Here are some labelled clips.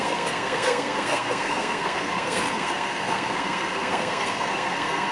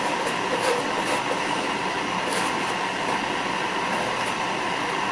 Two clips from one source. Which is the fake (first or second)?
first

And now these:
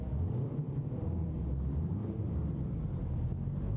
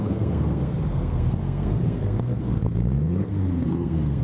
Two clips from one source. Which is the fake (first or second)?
second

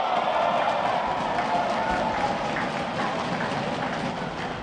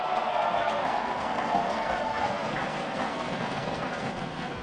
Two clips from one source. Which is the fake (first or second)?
second